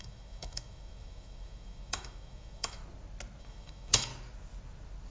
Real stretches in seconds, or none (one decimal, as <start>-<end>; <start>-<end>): 2.8-3.4; 4.1-5.1